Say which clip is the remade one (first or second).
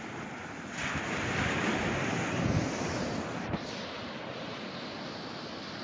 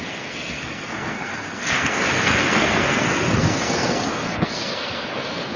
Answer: second